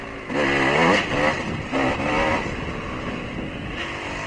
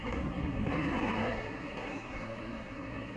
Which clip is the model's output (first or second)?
second